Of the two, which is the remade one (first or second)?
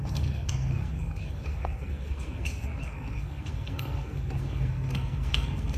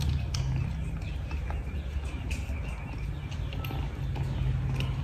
first